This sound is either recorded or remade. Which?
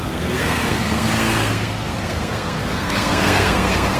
remade